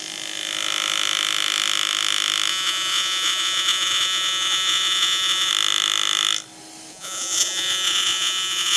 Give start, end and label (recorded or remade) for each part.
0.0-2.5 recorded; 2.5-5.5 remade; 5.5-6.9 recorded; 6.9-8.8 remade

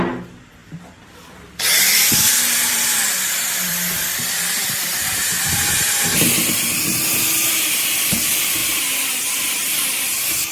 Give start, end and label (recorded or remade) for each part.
0.0-0.6 recorded; 0.6-5.2 remade; 5.2-10.5 recorded

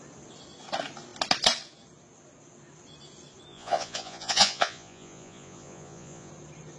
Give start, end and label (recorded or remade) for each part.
0.0-3.5 recorded; 3.5-6.3 remade; 6.3-6.8 recorded

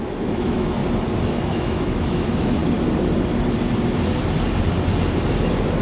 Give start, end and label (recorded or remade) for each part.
0.0-0.8 remade; 0.8-1.3 recorded; 1.3-2.6 remade; 2.6-5.8 recorded

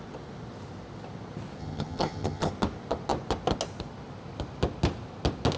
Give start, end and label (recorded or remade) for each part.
0.0-1.6 recorded; 1.6-2.5 remade; 2.5-5.6 recorded